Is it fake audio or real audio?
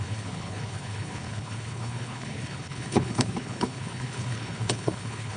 fake